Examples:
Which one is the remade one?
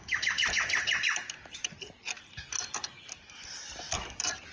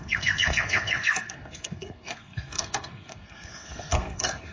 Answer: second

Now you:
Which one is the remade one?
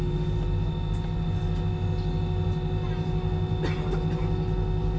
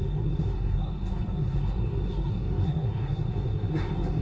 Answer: second